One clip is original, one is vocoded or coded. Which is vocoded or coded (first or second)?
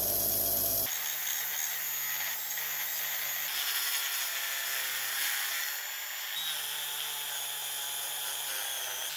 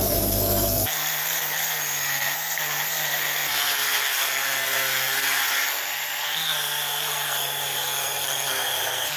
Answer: second